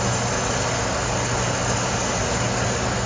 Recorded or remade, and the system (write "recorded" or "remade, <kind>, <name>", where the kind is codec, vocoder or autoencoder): recorded